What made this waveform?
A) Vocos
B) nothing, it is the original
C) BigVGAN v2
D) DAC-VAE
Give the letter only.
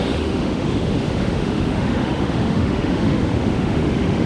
D